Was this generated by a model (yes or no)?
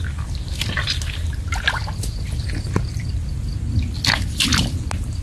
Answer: no